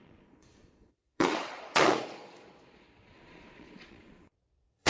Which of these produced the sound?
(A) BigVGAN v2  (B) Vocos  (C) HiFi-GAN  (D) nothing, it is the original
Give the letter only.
B